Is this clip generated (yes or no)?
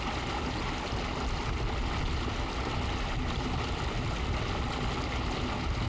no